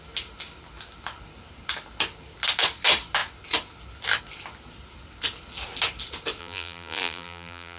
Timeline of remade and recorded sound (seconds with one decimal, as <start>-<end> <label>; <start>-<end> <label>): 0.0-6.4 recorded; 6.4-7.8 remade